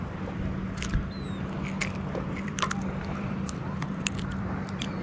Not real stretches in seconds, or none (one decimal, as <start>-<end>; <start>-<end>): 1.8-5.0